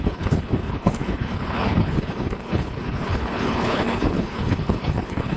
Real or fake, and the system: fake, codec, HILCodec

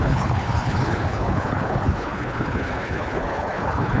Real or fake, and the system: fake, codec, HILCodec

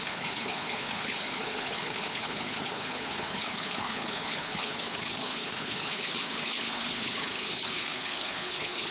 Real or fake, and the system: fake, codec, HILCodec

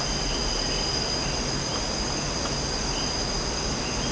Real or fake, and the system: real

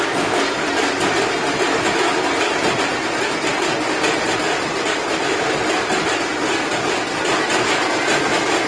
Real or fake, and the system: real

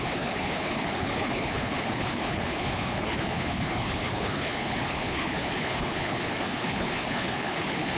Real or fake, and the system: fake, codec, HILCodec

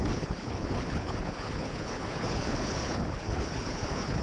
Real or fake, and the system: fake, codec, HILCodec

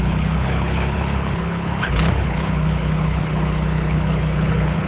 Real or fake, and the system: fake, codec, HILCodec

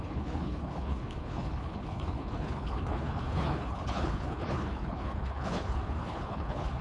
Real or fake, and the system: fake, codec, HILCodec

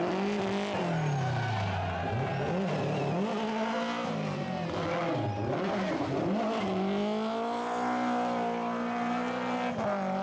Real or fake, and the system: real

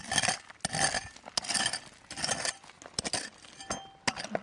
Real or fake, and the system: real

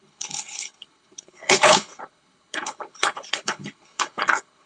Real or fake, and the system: fake, codec, HILCodec